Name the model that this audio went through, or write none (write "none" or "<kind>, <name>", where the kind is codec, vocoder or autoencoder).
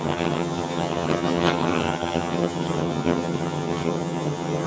vocoder, HiFi-GAN